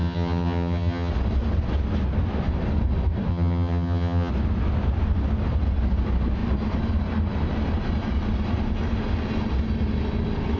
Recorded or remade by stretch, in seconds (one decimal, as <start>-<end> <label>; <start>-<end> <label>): 0.0-1.1 remade; 1.1-3.3 recorded; 3.3-4.3 remade; 4.3-10.6 recorded